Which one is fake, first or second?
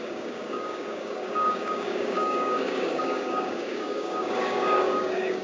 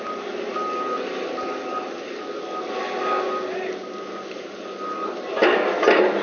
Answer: first